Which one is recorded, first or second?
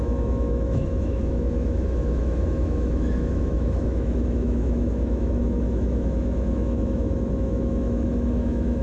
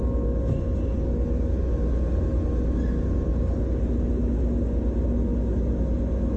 second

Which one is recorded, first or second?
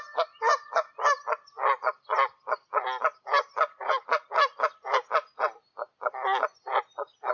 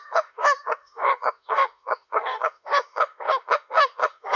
first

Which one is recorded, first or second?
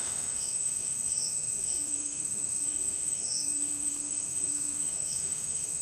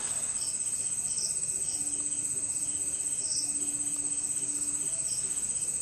second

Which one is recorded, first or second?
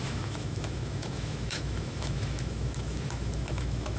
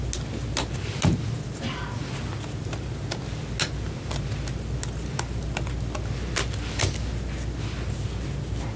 second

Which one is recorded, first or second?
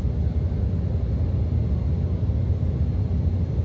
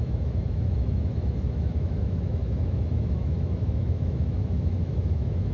first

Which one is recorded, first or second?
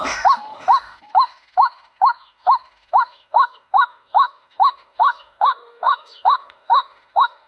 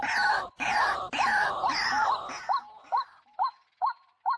second